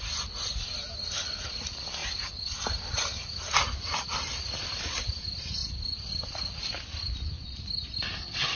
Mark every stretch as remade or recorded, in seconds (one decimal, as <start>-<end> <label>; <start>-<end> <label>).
0.0-8.6 recorded